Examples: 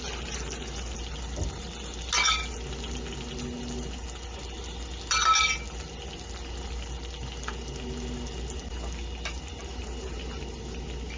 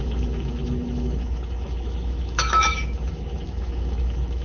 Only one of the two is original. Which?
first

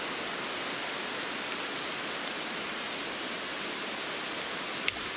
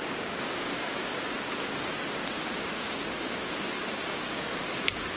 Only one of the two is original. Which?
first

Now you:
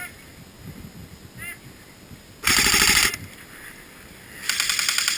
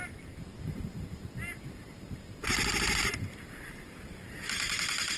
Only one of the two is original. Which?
first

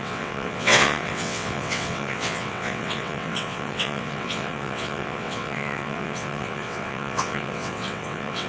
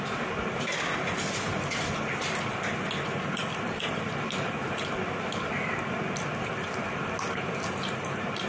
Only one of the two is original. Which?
second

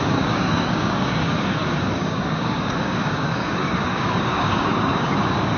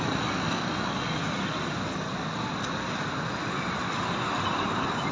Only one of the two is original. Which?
second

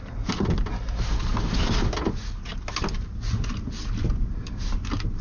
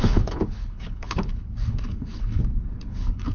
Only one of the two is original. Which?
first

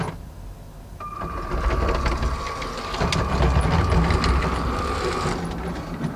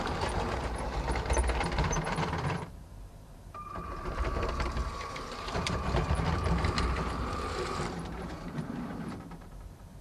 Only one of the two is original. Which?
first